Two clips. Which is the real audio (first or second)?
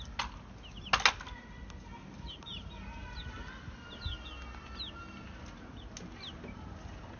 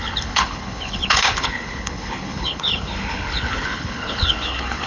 first